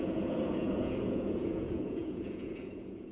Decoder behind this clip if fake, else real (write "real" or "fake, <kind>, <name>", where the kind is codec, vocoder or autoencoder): fake, vocoder, Vocos